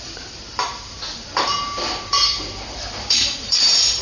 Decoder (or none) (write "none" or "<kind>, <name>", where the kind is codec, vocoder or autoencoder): vocoder, BigVGAN v2